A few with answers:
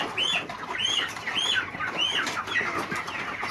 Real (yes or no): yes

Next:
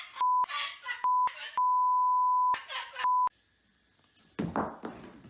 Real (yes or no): yes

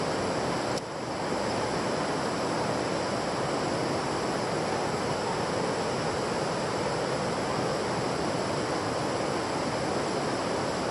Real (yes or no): yes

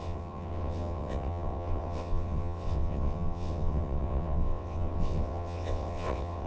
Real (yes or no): no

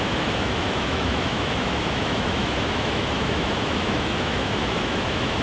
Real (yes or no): no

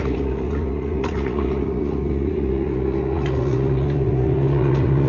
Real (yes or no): no